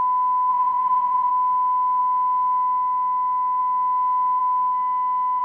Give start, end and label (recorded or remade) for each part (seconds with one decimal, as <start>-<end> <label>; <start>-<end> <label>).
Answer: 0.0-0.5 recorded; 0.5-1.3 remade; 1.3-5.4 recorded